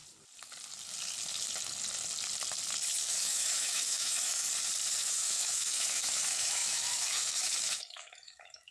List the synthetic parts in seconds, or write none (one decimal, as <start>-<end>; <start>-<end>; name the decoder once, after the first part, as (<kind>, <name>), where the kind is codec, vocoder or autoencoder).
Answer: 3.1-4.4 (autoencoder, DAC-VAE); 5.0-8.7